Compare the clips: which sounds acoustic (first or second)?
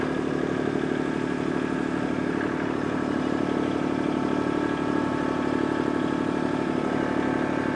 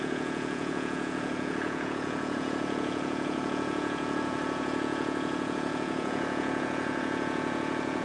first